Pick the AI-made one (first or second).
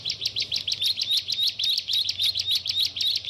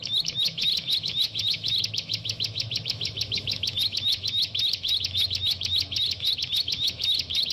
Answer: second